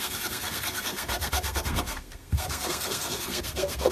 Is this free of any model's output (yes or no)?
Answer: no